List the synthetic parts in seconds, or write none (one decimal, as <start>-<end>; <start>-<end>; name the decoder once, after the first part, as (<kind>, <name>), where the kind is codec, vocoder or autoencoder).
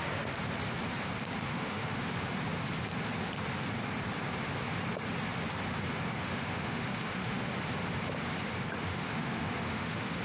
1.5-2.1 (autoencoder, DAC-VAE); 6.2-7.5; 8.9-10.2